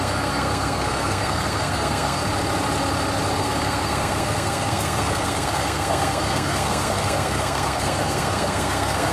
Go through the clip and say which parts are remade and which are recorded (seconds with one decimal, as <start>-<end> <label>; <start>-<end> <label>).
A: 0.0-2.2 remade; 2.2-3.3 recorded; 3.3-9.1 remade